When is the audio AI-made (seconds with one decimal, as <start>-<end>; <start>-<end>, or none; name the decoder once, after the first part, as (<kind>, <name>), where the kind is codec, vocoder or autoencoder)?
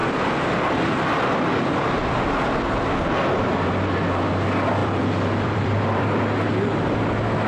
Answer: 0.0-1.2 (vocoder, BigVGAN v2); 4.8-6.2